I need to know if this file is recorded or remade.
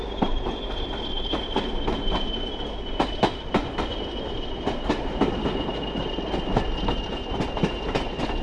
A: recorded